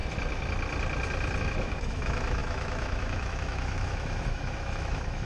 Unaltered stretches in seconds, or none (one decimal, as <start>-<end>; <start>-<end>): 0.0-1.4

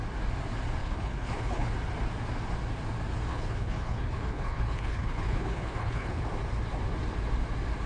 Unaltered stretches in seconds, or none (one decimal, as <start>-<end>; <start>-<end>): 0.0-0.8; 1.7-3.3; 6.2-7.9

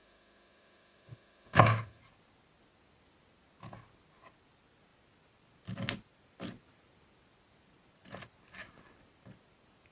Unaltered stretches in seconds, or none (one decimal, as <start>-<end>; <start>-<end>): 2.0-9.9

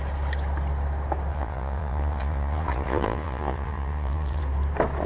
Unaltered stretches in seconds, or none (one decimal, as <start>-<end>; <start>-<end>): 0.0-1.3; 4.4-5.1

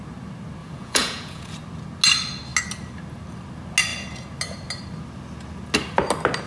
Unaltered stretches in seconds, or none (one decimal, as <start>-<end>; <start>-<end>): 0.0-0.6; 1.5-6.5

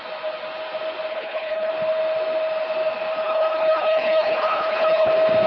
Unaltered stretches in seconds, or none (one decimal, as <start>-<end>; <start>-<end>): 0.0-1.1; 1.7-3.2; 5.1-5.5

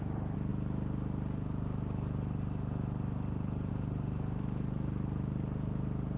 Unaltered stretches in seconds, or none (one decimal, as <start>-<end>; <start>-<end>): 0.5-3.7